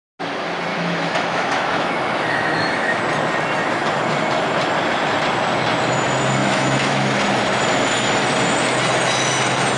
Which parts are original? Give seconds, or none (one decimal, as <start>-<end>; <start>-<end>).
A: 0.0-0.7; 3.0-6.4; 7.2-9.8